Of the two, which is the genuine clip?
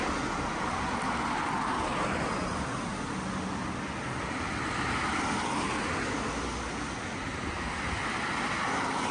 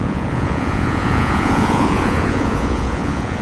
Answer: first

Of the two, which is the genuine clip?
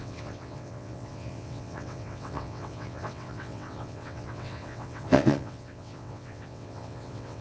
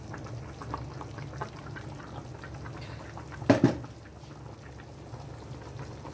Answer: second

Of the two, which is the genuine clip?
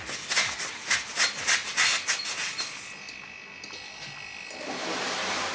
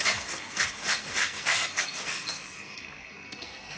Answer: first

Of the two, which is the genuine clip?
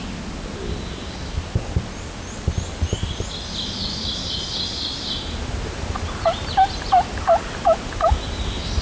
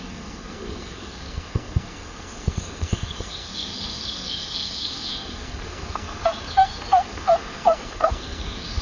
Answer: first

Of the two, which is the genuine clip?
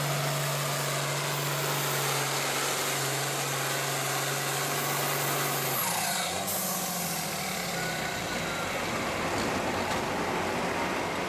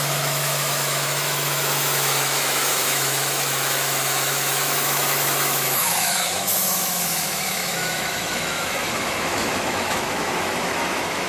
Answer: first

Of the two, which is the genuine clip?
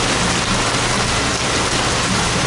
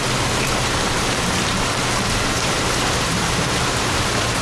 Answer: first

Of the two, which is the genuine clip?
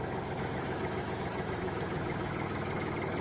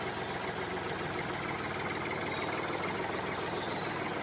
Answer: second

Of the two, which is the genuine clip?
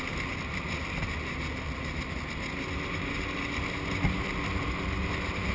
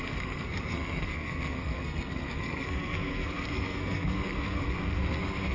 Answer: first